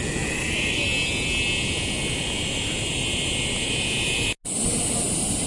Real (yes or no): yes